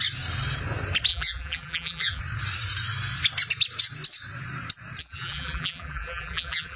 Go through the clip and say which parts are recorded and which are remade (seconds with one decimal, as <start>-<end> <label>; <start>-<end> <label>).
0.0-1.1 recorded; 1.1-2.2 remade; 2.2-5.0 recorded; 5.0-6.8 remade